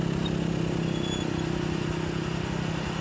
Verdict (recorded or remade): recorded